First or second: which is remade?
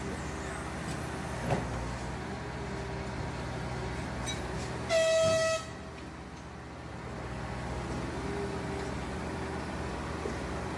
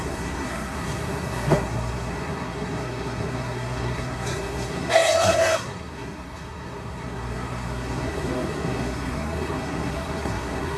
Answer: second